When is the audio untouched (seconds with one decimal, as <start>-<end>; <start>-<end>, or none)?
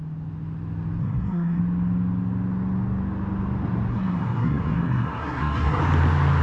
0.0-1.0; 1.6-3.9; 5.8-6.4